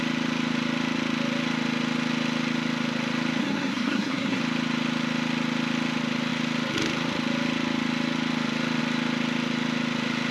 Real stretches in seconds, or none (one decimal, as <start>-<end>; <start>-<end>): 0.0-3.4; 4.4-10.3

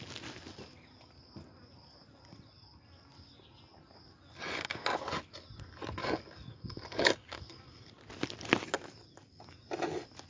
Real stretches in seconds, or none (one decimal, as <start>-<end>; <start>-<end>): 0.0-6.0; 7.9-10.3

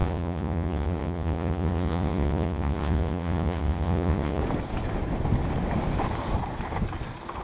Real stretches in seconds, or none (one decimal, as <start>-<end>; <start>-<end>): 4.4-7.4